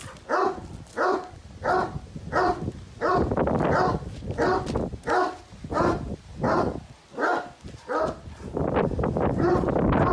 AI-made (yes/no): no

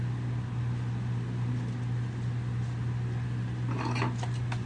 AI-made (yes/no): no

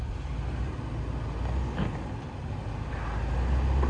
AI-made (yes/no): no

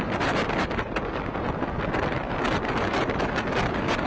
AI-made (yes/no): no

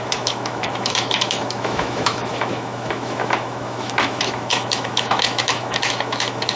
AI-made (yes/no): yes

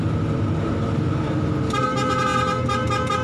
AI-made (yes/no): no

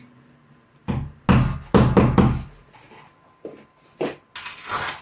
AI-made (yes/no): no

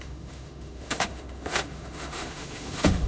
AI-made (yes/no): yes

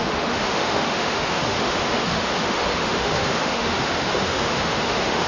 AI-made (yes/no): yes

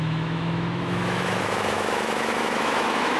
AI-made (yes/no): yes